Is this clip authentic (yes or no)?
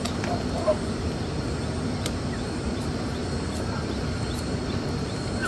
yes